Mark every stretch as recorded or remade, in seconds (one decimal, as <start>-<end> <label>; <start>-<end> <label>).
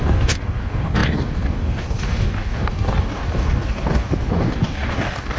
0.0-5.4 remade